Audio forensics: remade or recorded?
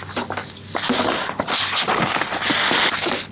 recorded